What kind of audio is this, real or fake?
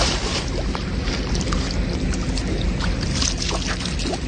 real